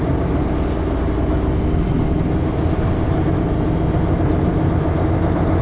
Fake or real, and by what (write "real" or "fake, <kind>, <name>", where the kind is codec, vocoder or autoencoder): real